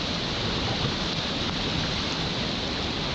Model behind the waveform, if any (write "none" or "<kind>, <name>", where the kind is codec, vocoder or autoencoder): none